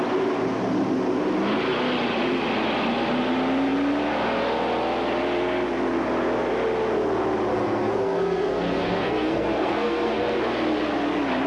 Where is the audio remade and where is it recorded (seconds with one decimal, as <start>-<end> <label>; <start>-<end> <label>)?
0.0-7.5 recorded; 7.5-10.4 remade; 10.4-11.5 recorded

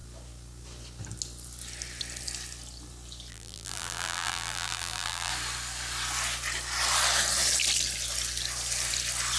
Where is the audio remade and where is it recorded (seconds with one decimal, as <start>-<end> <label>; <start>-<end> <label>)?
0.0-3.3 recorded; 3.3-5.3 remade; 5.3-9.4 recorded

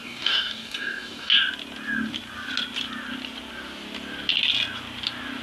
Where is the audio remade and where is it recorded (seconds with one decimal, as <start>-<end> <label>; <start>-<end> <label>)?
0.0-1.3 remade; 1.3-5.4 recorded

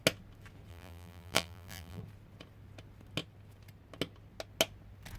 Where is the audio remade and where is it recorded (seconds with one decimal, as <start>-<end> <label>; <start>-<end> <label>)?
0.0-0.7 recorded; 0.7-2.0 remade; 2.0-5.2 recorded